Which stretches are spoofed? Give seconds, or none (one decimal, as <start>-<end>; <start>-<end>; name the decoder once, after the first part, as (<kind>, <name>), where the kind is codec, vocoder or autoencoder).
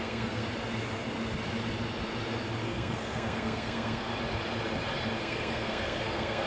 0.0-0.4 (codec, SNAC); 2.6-4.1; 5.2-6.5